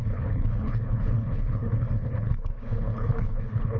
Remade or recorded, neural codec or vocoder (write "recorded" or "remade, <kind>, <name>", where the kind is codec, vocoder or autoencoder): remade, codec, HILCodec